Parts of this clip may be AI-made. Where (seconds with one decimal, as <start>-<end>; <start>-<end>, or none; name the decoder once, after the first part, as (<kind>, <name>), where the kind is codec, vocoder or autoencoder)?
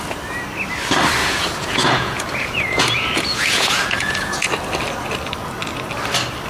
1.2-4.5 (vocoder, Vocos)